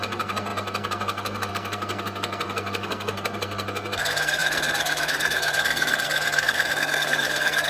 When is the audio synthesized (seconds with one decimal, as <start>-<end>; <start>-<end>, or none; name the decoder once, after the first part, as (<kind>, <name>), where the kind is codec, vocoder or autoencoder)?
0.0-7.7 (codec, SNAC)